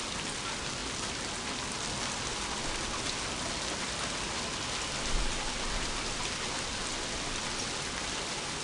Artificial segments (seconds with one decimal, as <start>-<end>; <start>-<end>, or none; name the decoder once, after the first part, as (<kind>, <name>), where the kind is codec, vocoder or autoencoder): none